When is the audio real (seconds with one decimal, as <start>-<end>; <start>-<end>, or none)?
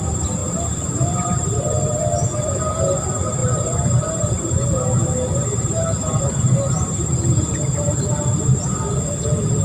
0.0-0.4; 1.6-9.6